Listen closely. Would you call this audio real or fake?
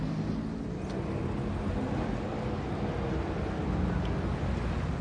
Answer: real